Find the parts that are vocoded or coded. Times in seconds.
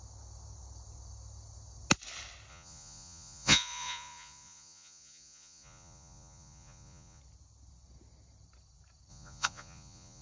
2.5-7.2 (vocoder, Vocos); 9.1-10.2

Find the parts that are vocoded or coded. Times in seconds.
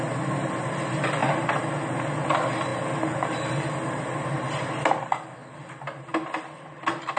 none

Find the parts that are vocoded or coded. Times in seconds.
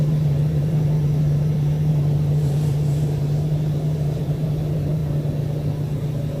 0.0-5.0 (vocoder, BigVGAN v2)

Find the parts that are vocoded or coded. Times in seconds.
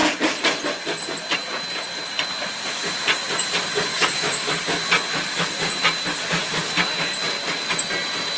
3.9-4.6 (autoencoder, DAC-VAE)